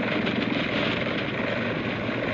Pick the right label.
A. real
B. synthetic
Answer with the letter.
A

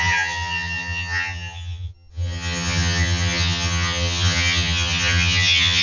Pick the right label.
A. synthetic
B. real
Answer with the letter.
A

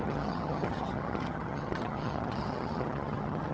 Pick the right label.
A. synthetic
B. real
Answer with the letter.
A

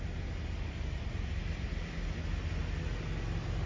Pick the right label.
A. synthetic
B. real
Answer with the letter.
B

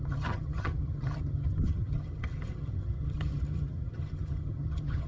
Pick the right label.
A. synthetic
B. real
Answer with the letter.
A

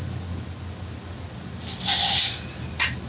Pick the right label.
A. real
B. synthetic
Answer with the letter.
A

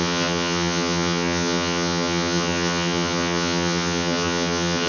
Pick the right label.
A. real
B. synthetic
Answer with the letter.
B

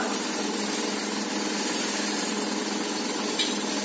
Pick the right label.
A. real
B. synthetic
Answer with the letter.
A